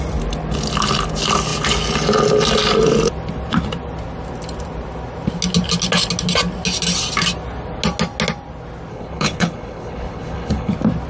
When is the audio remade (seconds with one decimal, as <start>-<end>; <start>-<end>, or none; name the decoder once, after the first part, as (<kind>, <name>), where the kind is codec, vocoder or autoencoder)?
8.9-10.7 (codec, HILCodec)